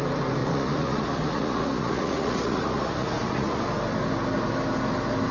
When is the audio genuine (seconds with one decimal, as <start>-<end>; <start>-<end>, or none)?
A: 0.0-0.4; 3.6-5.3